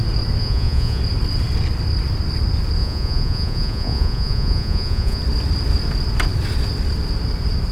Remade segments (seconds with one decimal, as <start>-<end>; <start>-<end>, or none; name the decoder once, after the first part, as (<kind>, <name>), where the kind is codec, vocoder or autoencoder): 0.4-1.0 (vocoder, Vocos); 2.8-5.2